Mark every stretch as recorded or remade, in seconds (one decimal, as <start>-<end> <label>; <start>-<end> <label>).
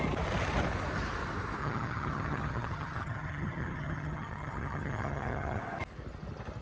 0.0-1.6 recorded; 1.6-5.6 remade; 5.6-6.6 recorded